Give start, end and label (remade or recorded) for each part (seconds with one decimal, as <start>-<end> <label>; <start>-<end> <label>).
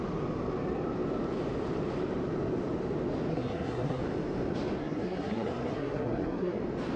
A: 0.0-3.3 recorded; 3.3-4.0 remade; 4.0-4.8 recorded; 4.8-6.6 remade; 6.6-7.0 recorded